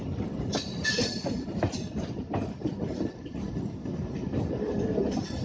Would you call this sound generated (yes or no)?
yes